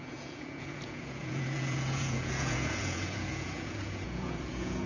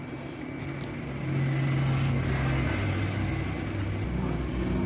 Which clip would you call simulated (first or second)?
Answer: first